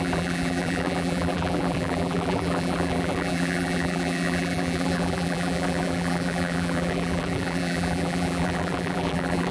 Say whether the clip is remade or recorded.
remade